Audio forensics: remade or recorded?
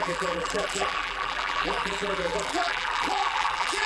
remade